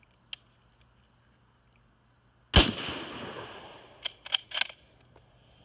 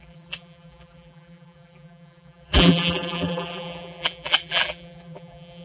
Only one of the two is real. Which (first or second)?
first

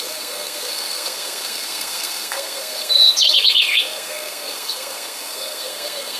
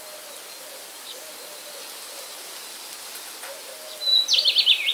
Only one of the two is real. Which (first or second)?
second